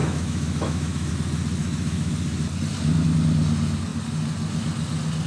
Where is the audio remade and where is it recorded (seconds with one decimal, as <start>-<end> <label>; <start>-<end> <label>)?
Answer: 0.0-1.1 remade; 1.1-1.6 recorded; 1.6-2.1 remade; 2.1-5.3 recorded